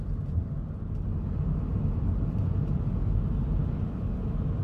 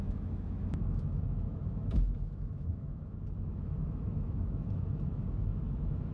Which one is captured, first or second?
first